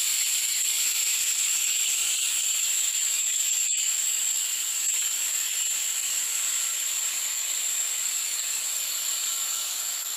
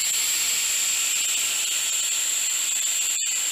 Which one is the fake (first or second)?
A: first